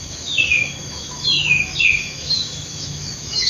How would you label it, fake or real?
fake